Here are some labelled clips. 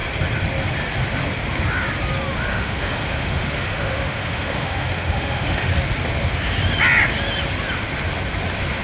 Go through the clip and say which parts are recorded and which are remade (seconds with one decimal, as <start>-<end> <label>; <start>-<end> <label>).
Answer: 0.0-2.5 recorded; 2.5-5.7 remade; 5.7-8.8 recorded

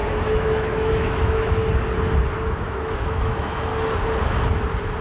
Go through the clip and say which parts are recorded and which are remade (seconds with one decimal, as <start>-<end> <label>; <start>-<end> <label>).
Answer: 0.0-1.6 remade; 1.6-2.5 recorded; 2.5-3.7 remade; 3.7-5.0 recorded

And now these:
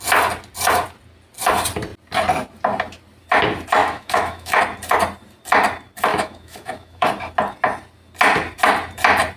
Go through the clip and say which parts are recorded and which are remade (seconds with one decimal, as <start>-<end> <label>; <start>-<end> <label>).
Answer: 0.0-3.8 recorded; 3.8-4.6 remade; 4.6-6.1 recorded; 6.1-7.1 remade; 7.1-9.4 recorded

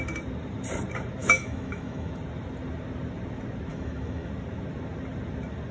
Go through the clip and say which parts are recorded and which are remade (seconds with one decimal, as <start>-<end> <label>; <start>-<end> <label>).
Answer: 0.0-1.2 recorded; 1.2-2.2 remade; 2.2-3.7 recorded; 3.7-4.3 remade; 4.3-5.7 recorded